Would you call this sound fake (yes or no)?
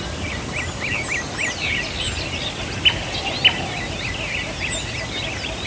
no